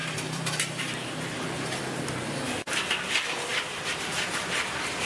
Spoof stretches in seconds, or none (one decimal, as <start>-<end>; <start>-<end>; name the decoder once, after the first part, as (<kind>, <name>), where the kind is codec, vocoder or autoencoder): 0.0-1.8 (vocoder, BigVGAN v2)